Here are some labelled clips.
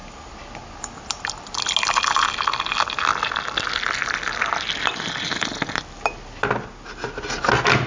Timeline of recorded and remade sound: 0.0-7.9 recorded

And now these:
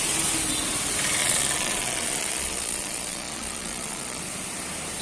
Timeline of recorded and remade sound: 0.0-1.2 recorded; 1.2-4.2 remade; 4.2-5.0 recorded

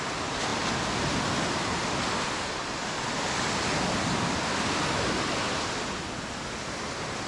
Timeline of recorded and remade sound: 0.0-7.3 recorded